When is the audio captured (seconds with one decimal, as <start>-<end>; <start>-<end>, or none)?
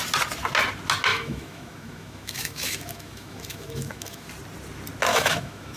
0.0-1.1; 4.3-5.1